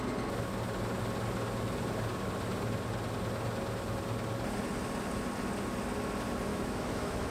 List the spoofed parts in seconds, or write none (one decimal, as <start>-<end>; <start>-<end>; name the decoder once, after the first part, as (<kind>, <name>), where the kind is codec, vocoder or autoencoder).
6.5-7.3 (autoencoder, DAC-VAE)